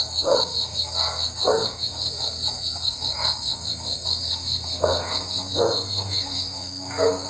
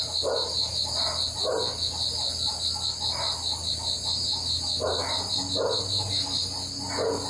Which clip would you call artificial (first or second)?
first